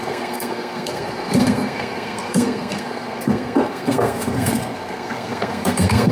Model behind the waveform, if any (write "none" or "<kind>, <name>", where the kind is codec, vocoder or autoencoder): codec, SNAC